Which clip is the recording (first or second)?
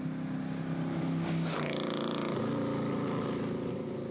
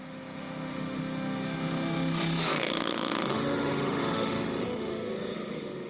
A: first